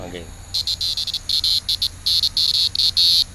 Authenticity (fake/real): real